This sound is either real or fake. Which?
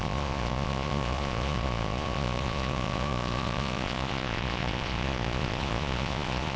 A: fake